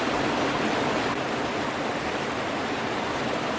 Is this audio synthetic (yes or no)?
no